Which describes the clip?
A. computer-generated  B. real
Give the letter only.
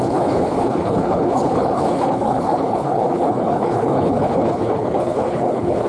A